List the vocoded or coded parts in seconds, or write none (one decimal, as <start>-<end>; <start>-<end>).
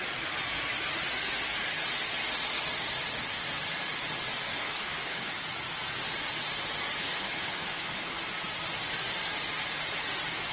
4.5-5.3; 7.0-8.2